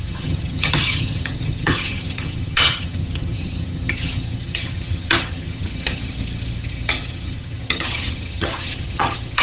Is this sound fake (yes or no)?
yes